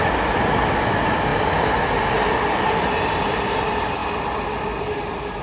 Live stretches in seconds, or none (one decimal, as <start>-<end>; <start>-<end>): 0.0-5.4